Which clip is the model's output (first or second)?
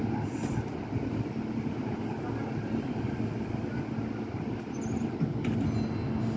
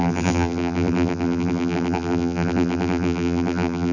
second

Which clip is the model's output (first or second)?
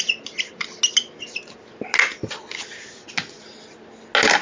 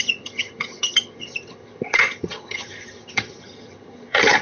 second